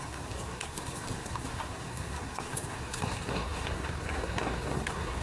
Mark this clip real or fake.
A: fake